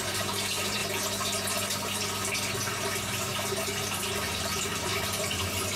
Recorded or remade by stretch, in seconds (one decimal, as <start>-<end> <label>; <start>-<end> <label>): 0.0-0.8 remade; 0.8-4.3 recorded; 4.3-4.9 remade; 4.9-5.8 recorded